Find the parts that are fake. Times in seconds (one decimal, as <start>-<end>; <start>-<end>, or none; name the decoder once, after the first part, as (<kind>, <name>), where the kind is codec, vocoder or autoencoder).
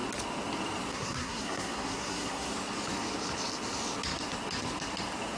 0.9-2.5 (codec, SNAC)